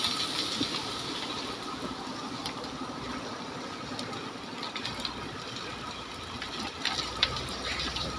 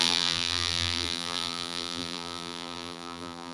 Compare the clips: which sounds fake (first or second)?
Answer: second